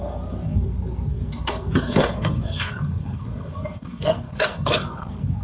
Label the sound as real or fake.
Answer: fake